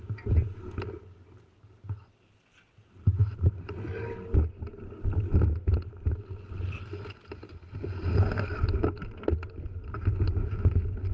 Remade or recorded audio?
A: recorded